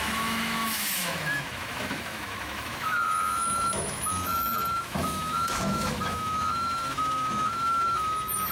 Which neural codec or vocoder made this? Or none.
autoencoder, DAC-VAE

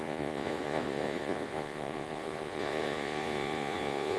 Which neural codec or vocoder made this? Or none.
vocoder, Vocos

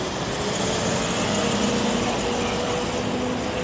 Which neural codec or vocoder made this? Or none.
none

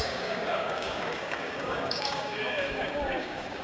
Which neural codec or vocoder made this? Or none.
codec, DAC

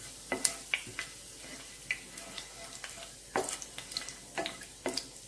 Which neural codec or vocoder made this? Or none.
none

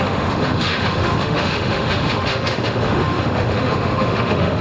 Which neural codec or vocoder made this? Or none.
autoencoder, DAC-VAE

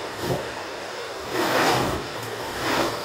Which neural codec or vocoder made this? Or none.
codec, DAC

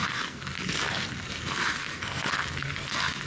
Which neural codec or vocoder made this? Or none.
codec, SNAC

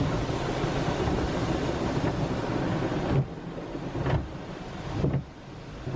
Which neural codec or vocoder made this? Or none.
none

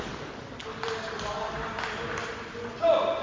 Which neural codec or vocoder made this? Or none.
none